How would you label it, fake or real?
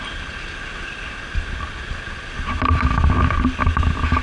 real